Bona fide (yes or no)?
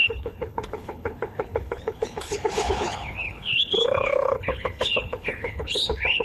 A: no